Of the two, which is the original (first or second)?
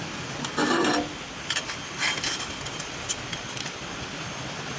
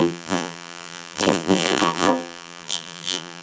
first